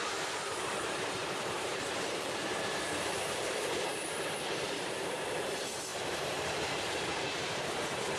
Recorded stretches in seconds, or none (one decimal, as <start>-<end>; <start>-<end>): none